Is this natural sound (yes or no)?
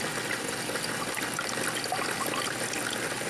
yes